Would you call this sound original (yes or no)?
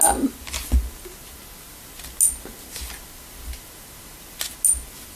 yes